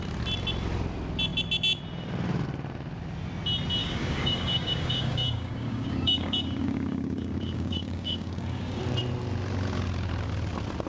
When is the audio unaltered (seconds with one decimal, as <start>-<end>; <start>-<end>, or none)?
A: 0.0-3.8; 8.8-10.9